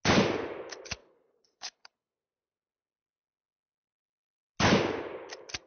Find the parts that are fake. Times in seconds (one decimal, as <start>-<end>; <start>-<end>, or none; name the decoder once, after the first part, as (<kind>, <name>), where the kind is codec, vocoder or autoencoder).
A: 1.0-2.1 (codec, HILCodec)